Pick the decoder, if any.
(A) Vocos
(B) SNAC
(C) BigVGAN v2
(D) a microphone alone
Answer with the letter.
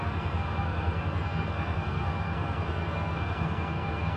B